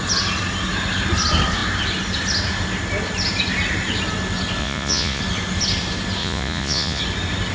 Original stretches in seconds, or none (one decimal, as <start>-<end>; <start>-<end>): 0.0-4.6; 5.2-6.2; 7.0-7.5